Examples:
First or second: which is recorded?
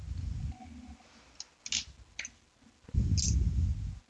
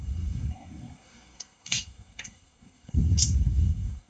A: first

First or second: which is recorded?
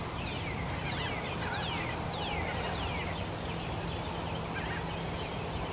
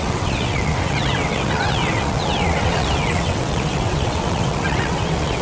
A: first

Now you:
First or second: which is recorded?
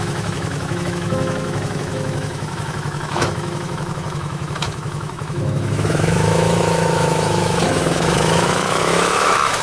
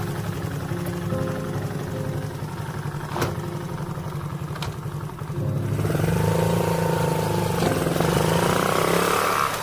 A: second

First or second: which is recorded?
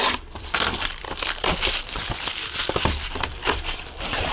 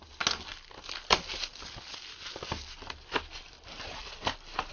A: second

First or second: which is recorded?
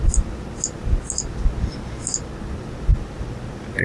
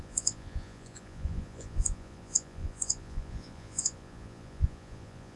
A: first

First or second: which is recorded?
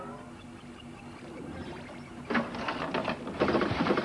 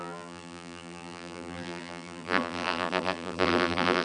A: first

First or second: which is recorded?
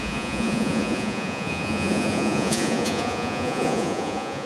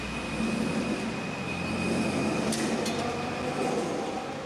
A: second